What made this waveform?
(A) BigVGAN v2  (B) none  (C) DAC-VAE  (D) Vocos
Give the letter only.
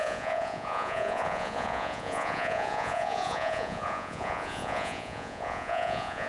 D